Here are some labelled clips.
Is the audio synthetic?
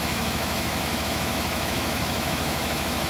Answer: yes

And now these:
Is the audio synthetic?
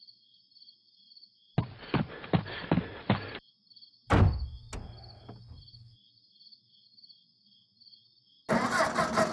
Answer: no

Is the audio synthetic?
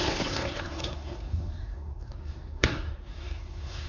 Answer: yes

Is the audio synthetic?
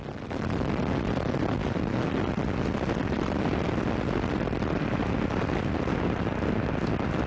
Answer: yes